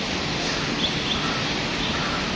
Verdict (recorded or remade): recorded